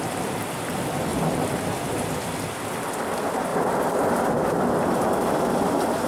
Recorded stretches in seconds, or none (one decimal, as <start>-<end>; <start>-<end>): 0.0-3.5; 4.2-6.1